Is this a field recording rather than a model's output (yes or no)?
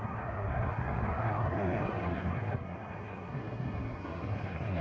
no